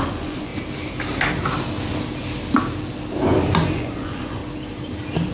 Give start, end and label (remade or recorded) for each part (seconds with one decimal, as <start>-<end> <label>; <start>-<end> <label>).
0.0-0.5 remade; 0.5-3.7 recorded; 3.7-4.4 remade; 4.4-5.3 recorded

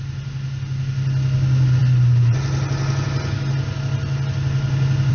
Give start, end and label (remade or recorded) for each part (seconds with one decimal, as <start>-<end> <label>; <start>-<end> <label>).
0.0-5.1 recorded

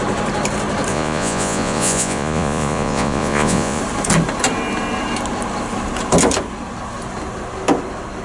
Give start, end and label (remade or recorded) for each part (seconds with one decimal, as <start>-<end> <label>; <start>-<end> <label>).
0.0-0.9 recorded; 0.9-3.8 remade; 3.8-8.2 recorded

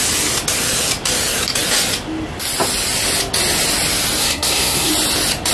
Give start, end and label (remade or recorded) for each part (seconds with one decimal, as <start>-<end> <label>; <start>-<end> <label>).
0.0-4.2 recorded; 4.2-4.9 remade; 4.9-5.5 recorded

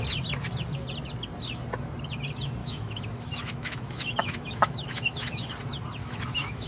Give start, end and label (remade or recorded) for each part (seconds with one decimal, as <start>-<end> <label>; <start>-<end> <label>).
0.0-2.6 recorded; 2.6-5.5 remade; 5.5-6.0 recorded; 6.0-6.7 remade